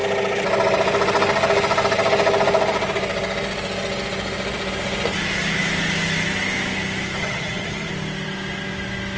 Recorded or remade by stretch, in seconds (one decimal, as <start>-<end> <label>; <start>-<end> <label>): 0.0-7.2 recorded; 7.2-7.9 remade; 7.9-9.2 recorded